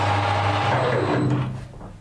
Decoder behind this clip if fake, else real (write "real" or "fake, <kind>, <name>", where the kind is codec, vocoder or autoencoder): real